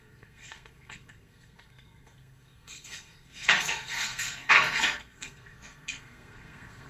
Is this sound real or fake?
fake